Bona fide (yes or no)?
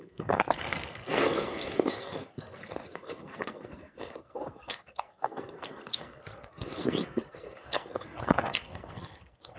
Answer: no